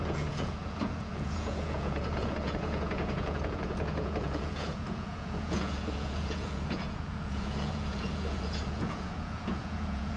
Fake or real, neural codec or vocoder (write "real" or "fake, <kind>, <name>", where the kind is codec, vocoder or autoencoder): fake, vocoder, Vocos